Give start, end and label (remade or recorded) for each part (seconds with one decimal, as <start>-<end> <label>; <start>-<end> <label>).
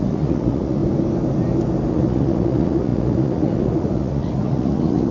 0.0-0.8 remade; 0.8-1.9 recorded; 1.9-5.1 remade